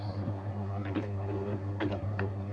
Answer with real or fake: fake